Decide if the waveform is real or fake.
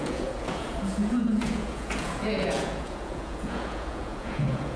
fake